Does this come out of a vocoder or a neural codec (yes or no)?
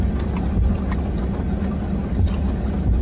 no